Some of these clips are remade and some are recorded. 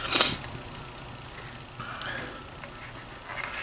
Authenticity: recorded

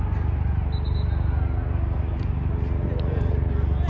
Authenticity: recorded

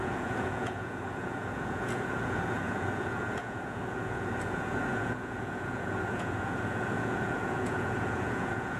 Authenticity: remade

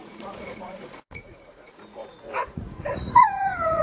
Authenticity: remade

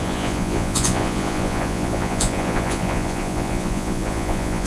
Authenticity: remade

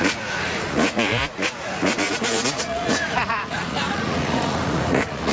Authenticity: remade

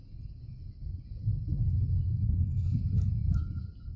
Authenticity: remade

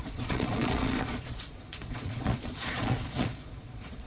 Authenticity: remade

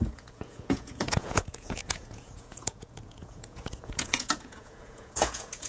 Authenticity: remade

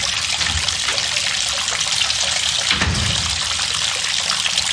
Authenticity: recorded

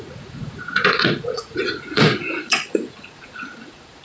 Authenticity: remade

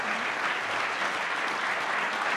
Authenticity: recorded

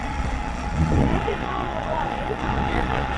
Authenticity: remade